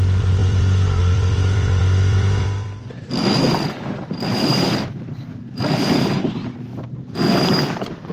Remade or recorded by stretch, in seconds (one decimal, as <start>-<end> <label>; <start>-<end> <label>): 0.0-6.7 remade; 6.7-7.4 recorded; 7.4-8.1 remade